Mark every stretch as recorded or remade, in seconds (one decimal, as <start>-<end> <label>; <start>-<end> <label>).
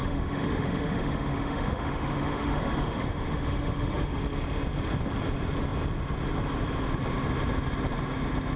0.0-4.2 remade; 4.2-8.6 recorded